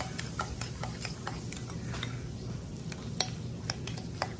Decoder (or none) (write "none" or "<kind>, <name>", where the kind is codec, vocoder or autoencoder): none